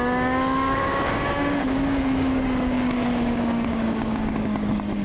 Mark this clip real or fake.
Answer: fake